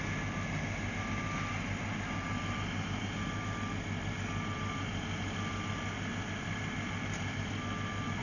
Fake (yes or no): no